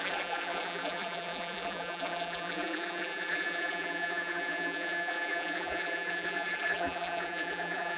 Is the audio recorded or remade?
remade